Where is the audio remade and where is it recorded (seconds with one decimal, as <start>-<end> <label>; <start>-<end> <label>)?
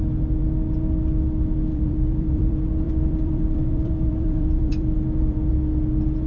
0.0-1.7 recorded; 1.7-5.5 remade; 5.5-6.3 recorded